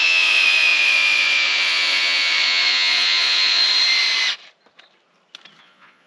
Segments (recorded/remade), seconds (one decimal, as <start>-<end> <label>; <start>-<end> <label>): 0.0-3.6 remade; 3.6-5.6 recorded; 5.6-6.1 remade